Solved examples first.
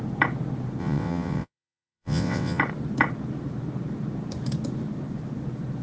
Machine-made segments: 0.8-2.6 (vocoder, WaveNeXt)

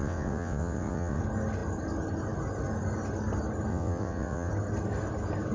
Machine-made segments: 0.0-1.2 (vocoder, WaveNeXt); 3.7-4.5

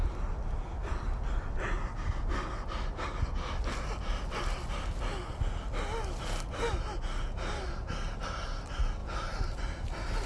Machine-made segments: none

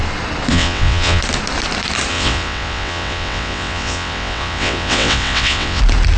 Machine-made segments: 0.5-1.2 (vocoder, WaveNeXt); 2.1-5.8

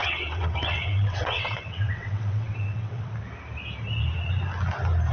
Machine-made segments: 0.0-3.1 (vocoder, WaveNeXt)